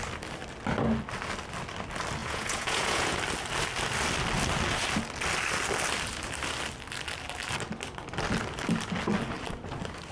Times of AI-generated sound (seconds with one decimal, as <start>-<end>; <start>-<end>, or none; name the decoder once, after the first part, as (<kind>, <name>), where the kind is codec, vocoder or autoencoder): 2.2-3.2 (vocoder, Vocos)